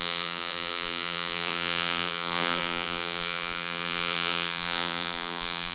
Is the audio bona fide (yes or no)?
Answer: no